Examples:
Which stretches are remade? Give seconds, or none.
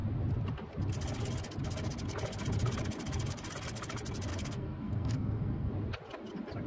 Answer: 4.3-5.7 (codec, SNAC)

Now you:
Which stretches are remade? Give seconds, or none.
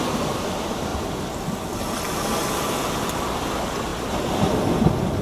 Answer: none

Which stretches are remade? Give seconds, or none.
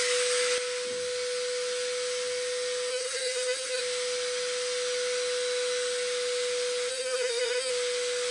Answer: 2.9-3.8 (codec, SNAC); 6.9-7.7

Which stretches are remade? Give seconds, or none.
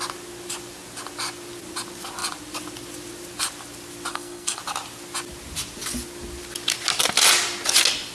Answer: 4.1-4.6 (codec, SNAC)